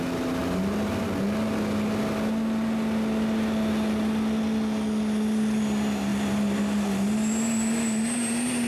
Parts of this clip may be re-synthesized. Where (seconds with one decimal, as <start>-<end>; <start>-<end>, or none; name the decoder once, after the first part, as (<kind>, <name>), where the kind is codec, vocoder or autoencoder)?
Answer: none

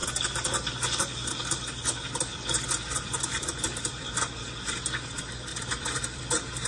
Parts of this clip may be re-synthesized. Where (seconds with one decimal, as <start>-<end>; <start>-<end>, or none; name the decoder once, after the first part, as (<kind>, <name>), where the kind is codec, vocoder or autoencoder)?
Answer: 2.3-4.4 (vocoder, BigVGAN v2); 5.5-6.2

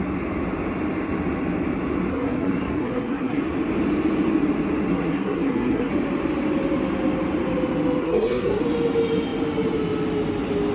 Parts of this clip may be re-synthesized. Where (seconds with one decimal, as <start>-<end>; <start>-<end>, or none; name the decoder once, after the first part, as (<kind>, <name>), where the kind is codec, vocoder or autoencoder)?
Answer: 2.1-3.4 (codec, SNAC); 4.8-5.9; 8.0-8.6

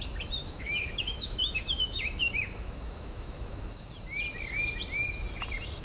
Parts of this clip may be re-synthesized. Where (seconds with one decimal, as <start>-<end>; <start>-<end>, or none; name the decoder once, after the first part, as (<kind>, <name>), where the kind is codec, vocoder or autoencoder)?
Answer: 0.4-3.9 (autoencoder, DAC-VAE)

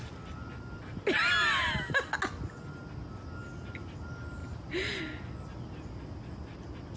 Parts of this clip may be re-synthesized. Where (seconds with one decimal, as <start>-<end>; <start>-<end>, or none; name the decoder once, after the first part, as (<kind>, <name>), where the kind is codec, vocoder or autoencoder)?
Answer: 4.4-5.0 (vocoder, BigVGAN v2)